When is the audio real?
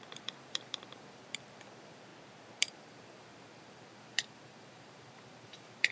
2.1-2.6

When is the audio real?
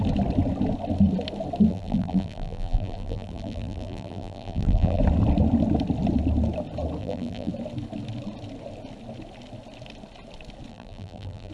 0.0-1.7; 5.0-7.0; 7.5-10.7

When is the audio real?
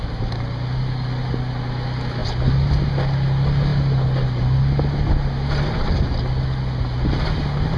0.0-7.8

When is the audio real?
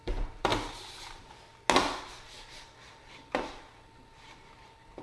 0.5-1.0; 1.5-2.3